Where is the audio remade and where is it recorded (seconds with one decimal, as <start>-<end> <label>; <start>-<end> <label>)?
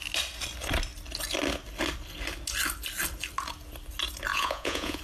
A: 0.0-4.3 recorded; 4.3-5.0 remade